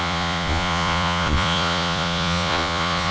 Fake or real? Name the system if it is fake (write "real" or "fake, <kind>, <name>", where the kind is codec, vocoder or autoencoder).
fake, vocoder, Vocos